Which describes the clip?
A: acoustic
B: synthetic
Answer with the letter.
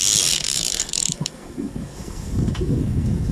B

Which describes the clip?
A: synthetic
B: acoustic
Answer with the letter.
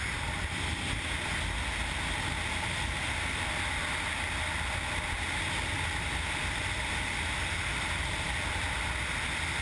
B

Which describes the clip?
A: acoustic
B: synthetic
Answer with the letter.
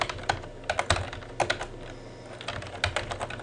A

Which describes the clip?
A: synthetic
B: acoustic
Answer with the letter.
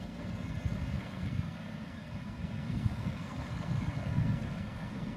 A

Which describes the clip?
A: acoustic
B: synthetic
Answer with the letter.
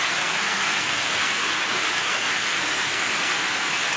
B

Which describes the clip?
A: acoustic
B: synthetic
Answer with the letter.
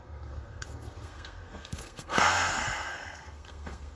B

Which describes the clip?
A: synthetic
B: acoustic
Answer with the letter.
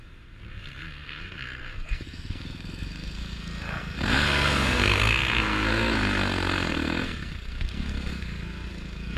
A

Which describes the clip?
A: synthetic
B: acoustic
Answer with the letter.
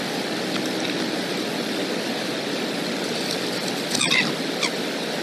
B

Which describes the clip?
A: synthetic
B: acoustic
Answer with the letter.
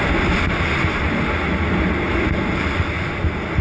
B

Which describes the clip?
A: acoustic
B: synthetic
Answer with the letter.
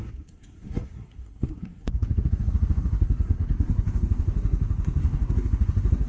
B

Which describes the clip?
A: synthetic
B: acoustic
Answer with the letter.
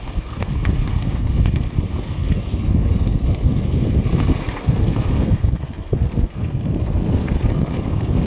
A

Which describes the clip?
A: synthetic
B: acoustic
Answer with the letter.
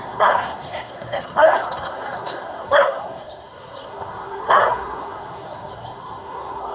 A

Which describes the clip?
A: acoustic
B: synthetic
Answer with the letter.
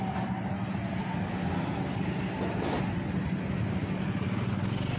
A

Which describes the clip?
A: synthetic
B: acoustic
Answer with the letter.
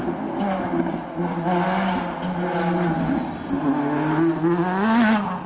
B